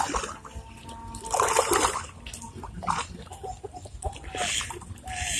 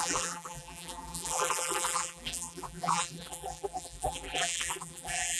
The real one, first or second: first